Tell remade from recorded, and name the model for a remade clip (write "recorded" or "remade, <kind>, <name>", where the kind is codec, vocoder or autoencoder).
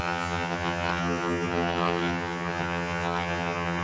remade, vocoder, HiFi-GAN